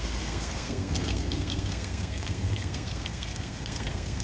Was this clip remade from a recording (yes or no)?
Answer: yes